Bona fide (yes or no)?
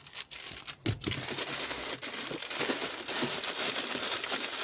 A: yes